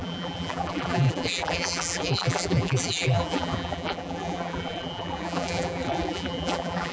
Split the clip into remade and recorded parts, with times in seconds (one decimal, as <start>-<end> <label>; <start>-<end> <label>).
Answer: 0.0-6.9 remade